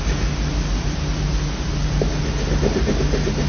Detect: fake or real real